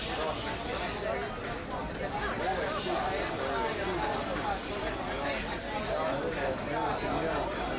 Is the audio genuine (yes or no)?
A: yes